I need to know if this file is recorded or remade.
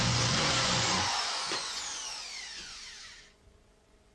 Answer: remade